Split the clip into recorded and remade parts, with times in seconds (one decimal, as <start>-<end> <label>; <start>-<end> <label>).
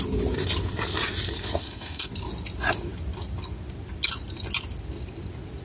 0.0-1.6 recorded; 1.6-2.1 remade; 2.1-5.6 recorded